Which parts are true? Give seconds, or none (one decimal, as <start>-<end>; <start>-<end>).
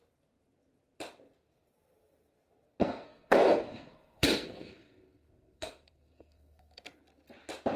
0.0-2.8; 6.8-7.8